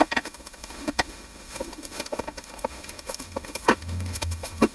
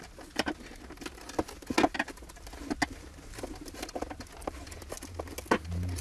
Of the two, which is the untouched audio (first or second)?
second